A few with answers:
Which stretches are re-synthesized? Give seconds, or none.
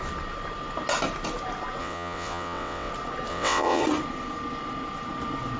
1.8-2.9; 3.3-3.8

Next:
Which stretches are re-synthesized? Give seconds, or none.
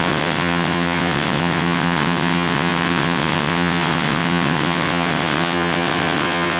0.0-6.6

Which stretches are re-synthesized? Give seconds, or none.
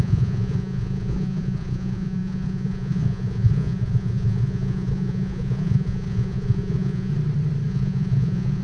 0.0-7.1; 7.7-8.6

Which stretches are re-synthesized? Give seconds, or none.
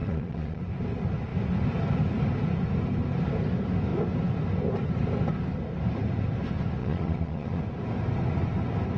0.0-0.6; 6.8-7.6